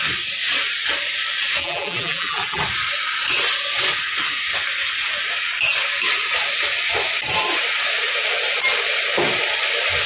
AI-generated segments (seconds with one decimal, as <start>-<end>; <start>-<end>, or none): 1.6-2.6